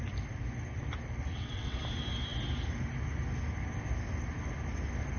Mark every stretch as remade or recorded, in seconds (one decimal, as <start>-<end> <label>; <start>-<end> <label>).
0.0-1.3 recorded; 1.3-1.8 remade; 1.8-5.2 recorded